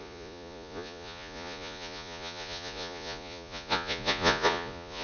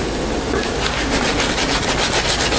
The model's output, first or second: first